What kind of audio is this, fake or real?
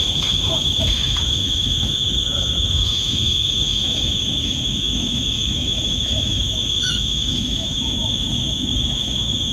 fake